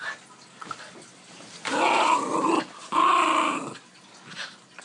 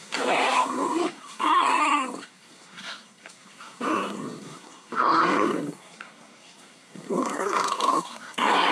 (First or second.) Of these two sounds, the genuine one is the first